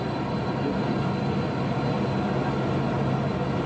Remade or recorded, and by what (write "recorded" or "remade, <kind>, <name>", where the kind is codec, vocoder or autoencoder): recorded